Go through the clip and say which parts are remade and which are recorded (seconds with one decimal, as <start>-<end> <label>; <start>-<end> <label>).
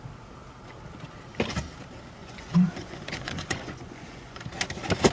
0.0-2.2 recorded; 2.2-4.4 remade; 4.4-5.1 recorded